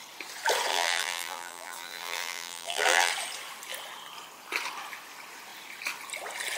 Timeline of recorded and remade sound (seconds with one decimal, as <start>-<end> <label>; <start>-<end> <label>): 0.0-0.7 recorded; 0.7-3.1 remade; 3.1-6.6 recorded